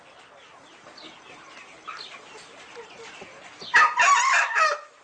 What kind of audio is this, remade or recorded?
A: recorded